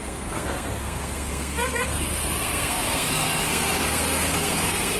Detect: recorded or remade remade